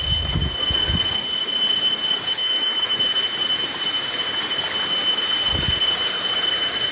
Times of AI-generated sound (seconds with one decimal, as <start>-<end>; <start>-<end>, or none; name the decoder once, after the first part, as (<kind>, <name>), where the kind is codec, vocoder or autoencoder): 2.4-3.0 (autoencoder, DAC-VAE)

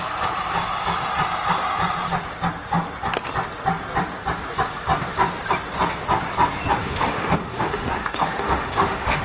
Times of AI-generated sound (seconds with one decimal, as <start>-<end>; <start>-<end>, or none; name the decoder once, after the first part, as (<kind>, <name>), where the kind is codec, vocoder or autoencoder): 6.8-9.2 (autoencoder, DAC-VAE)

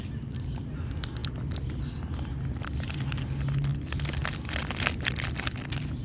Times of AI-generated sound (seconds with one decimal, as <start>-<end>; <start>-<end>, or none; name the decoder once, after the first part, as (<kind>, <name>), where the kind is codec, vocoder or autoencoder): none

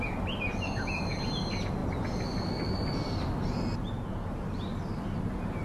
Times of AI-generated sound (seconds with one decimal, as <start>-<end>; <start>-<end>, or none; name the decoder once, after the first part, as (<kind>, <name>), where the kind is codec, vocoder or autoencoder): none